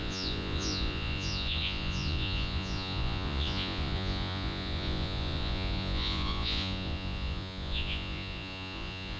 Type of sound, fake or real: fake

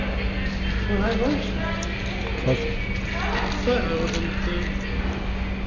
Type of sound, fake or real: real